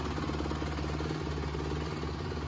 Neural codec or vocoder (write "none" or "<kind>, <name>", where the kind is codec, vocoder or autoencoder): none